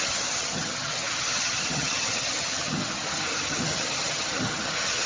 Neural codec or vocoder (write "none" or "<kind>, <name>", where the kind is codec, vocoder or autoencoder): vocoder, HiFi-GAN